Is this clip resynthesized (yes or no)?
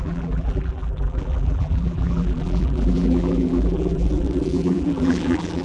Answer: yes